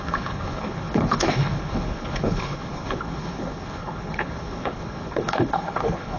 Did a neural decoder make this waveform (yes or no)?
yes